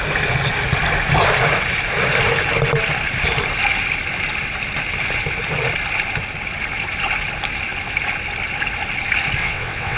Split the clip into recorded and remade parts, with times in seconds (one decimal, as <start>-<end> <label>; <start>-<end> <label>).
0.0-9.4 recorded; 9.4-10.0 remade